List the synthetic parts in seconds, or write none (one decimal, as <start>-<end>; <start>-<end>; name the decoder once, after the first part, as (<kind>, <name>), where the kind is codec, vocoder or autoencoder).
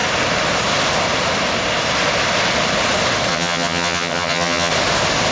3.3-4.7 (vocoder, HiFi-GAN)